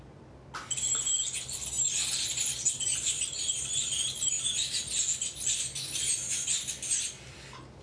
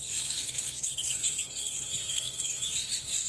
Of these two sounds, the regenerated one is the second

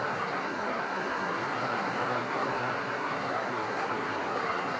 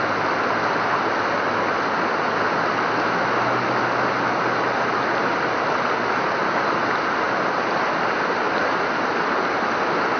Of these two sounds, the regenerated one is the first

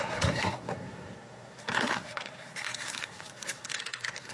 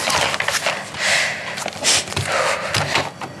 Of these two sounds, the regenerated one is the first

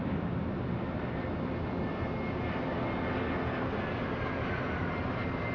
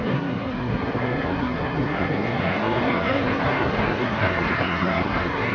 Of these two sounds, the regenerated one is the second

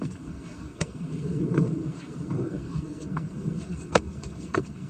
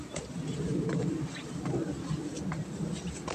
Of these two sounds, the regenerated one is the first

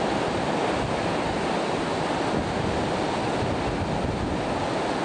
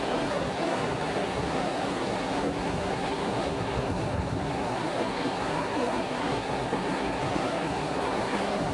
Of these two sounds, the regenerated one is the second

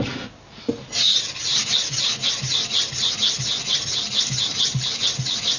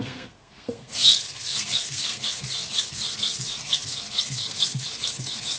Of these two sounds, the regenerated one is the second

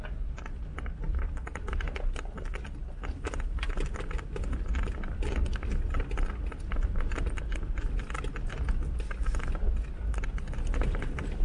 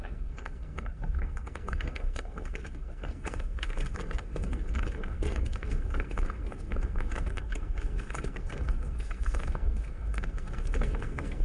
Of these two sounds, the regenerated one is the second